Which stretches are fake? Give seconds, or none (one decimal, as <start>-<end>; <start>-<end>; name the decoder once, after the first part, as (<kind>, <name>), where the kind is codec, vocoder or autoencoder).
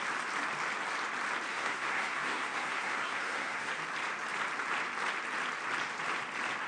1.5-3.7 (codec, SNAC)